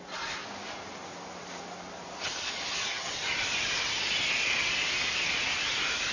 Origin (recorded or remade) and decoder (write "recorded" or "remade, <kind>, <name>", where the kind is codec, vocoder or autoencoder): recorded